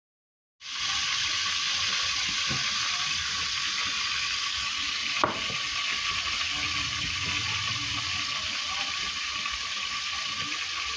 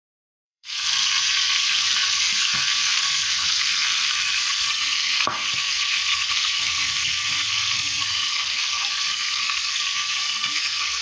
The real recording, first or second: first